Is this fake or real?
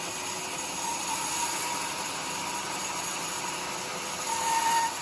real